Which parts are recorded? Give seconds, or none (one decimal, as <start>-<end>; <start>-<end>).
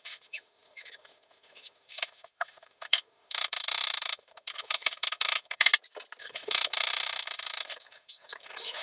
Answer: 5.7-6.2